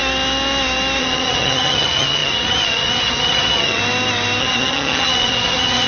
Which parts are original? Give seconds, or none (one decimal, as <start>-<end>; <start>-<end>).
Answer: 0.0-1.0; 3.8-4.4